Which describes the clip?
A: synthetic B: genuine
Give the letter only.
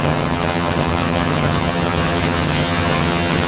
A